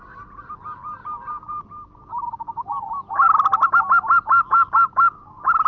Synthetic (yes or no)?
no